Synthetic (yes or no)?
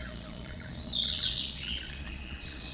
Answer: yes